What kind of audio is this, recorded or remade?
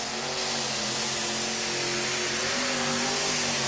recorded